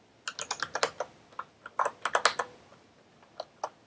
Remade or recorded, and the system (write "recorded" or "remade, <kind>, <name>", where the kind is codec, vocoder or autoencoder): recorded